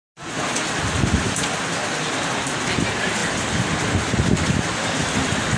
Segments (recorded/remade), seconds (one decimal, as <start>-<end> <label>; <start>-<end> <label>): 0.0-5.6 recorded